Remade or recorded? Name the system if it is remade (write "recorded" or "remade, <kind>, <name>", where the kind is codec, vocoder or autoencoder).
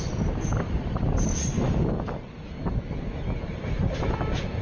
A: recorded